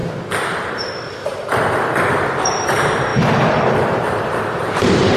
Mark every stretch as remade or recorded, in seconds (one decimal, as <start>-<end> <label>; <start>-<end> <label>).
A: 0.0-0.7 recorded; 0.7-3.1 remade; 3.1-3.8 recorded; 3.8-5.2 remade